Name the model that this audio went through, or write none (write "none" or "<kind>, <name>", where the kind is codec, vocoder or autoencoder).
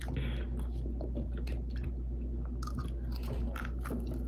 none